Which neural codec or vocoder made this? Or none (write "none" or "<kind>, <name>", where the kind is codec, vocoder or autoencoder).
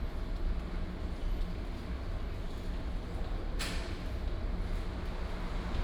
none